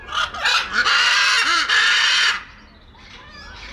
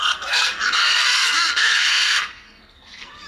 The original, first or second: first